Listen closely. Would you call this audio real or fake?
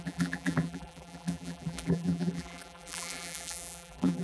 fake